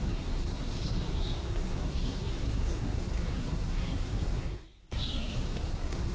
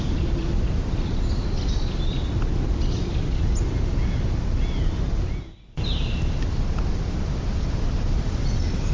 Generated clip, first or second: first